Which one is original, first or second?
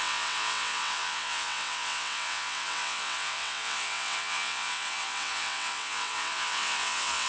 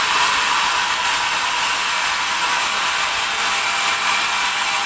second